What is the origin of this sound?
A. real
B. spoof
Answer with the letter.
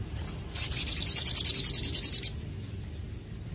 A